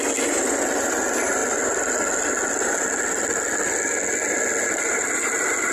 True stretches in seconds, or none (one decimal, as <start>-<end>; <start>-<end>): 0.0-5.7